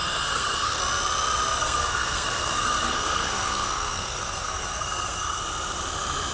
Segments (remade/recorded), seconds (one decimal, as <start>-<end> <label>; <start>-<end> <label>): 0.0-0.8 remade; 0.8-1.6 recorded; 1.6-5.4 remade; 5.4-6.3 recorded